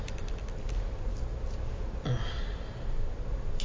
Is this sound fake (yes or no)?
no